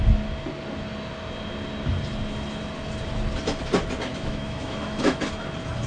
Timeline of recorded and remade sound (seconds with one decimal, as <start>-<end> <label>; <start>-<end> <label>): 0.0-4.1 recorded; 4.1-5.2 remade; 5.2-5.9 recorded